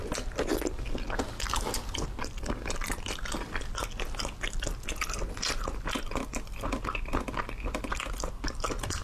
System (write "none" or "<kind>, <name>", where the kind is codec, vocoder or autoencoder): none